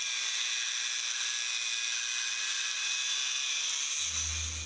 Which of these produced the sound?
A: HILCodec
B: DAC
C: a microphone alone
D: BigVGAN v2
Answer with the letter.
C